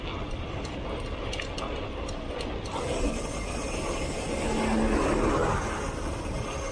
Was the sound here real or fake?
real